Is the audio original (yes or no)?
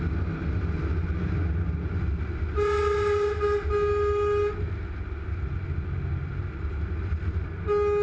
yes